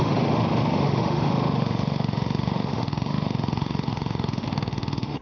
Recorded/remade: remade